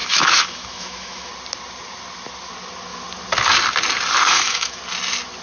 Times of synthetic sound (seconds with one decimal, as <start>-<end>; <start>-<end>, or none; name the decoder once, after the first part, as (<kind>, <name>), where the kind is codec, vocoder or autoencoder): 0.0-1.3 (autoencoder, DAC-VAE); 4.3-4.8